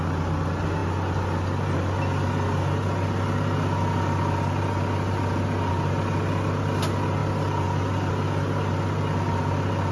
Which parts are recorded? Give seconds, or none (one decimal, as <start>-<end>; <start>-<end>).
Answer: 0.0-9.9